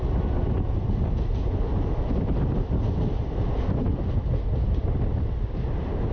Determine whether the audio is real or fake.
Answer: real